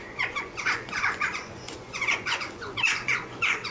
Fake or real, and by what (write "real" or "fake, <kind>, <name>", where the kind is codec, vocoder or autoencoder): fake, vocoder, Vocos